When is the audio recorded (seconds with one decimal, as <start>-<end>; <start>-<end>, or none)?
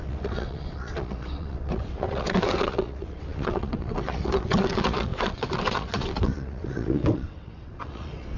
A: none